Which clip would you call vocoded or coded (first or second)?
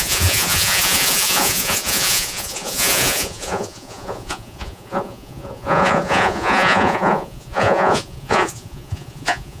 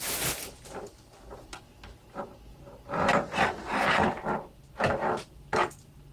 first